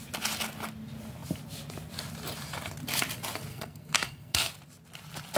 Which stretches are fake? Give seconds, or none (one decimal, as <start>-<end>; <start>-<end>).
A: 3.5-4.5